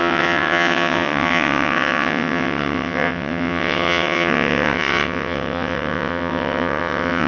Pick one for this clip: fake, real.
fake